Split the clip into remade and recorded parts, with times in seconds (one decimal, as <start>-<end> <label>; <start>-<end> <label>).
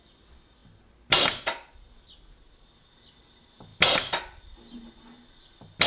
0.0-5.9 recorded